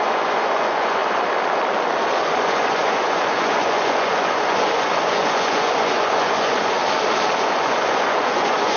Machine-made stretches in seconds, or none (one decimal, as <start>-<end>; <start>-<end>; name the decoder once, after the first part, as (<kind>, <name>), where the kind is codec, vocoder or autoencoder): 0.0-1.0 (vocoder, Vocos); 2.0-6.8; 7.4-8.8